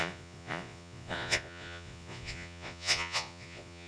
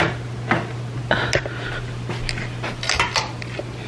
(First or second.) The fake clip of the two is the first